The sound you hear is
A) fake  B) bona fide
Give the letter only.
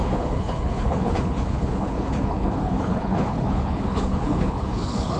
A